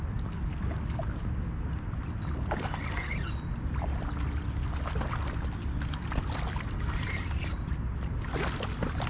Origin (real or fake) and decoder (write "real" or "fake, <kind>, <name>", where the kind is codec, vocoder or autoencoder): real